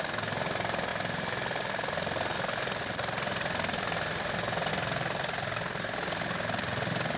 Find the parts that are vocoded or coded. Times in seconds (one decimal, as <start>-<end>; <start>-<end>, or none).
none